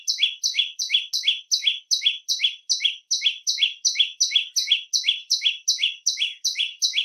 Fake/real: real